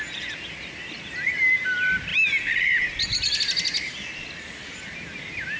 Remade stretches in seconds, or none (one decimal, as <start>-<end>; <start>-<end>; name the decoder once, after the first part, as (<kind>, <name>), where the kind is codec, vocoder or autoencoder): none